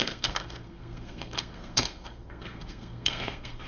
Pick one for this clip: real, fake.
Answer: fake